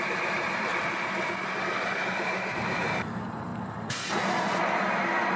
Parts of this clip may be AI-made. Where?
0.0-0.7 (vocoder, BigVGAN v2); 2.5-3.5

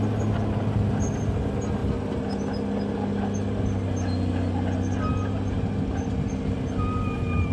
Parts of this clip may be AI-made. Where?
none

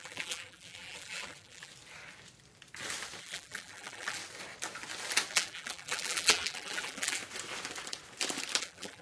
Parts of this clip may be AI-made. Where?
0.0-1.7 (vocoder, BigVGAN v2); 3.2-4.2; 5.3-7.2; 8.6-9.0

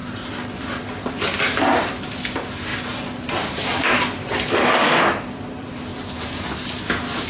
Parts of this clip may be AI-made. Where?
none